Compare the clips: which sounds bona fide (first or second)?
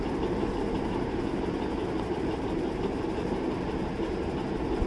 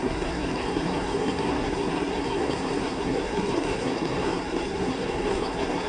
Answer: first